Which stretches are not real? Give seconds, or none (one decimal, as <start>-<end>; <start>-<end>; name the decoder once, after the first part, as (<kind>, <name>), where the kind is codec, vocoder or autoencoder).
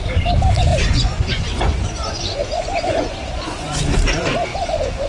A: 0.7-3.8 (vocoder, Vocos); 4.5-5.1